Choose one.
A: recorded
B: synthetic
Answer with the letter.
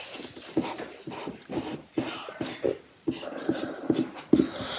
A